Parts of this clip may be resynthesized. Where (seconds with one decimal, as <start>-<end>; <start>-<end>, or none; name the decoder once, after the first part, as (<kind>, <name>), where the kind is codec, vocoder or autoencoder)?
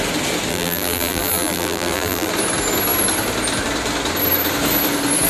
0.5-2.3 (vocoder, BigVGAN v2)